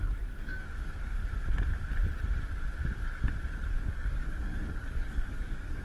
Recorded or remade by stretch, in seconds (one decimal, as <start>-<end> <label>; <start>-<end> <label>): 0.0-1.2 remade; 1.2-3.8 recorded; 3.8-5.8 remade